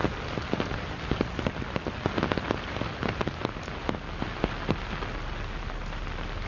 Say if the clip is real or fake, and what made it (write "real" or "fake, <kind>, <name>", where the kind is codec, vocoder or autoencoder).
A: real